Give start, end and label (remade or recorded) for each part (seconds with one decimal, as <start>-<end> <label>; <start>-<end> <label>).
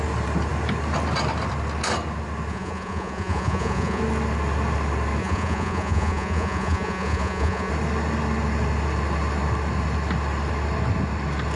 0.0-2.5 recorded; 2.5-4.0 remade; 4.0-5.2 recorded; 5.2-7.7 remade; 7.7-11.6 recorded